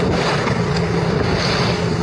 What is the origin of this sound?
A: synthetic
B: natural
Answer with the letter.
B